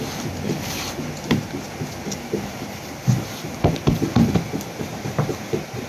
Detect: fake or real real